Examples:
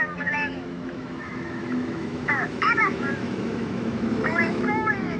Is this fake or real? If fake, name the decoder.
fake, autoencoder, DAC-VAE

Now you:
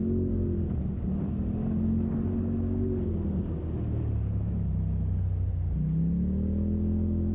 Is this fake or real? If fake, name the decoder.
real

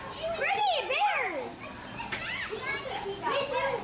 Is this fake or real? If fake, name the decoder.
real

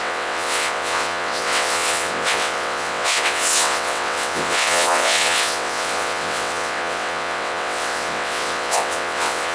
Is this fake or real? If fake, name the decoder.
fake, vocoder, WaveNeXt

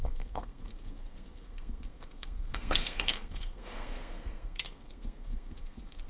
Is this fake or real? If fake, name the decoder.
fake, codec, SNAC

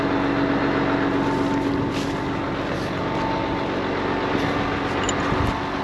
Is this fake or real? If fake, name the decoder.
real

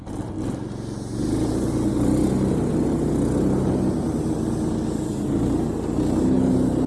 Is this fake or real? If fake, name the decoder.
real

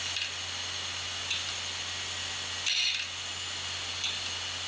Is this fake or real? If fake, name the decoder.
real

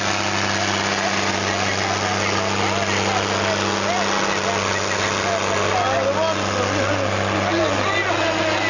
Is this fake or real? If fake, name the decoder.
real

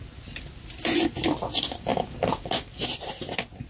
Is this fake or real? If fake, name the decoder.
real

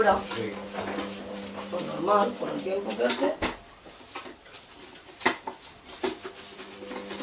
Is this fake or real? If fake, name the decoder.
real